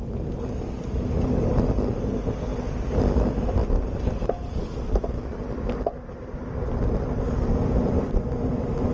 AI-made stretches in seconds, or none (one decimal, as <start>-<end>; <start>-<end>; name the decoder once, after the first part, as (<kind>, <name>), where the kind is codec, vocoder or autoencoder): none